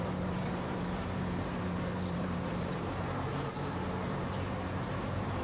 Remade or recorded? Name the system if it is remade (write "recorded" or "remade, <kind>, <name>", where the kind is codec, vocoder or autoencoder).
remade, vocoder, BigVGAN v2